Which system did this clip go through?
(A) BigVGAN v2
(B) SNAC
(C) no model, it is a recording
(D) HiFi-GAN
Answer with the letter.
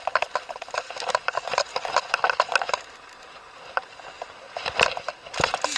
C